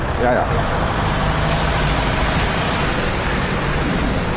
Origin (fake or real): real